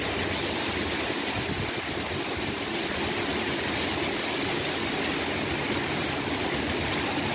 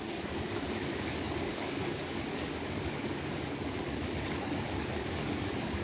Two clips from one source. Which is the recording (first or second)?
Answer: first